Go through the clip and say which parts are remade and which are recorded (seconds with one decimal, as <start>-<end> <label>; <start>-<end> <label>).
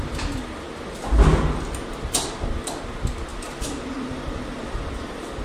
0.0-3.3 recorded; 3.3-4.8 remade; 4.8-5.4 recorded